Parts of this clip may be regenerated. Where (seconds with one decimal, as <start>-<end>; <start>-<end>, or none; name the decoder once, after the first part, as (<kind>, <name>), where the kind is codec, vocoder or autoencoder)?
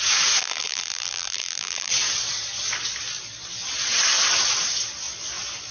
0.4-1.9 (vocoder, BigVGAN v2)